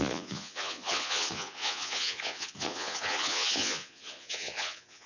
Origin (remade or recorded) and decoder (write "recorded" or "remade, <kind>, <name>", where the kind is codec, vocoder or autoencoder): remade, vocoder, Vocos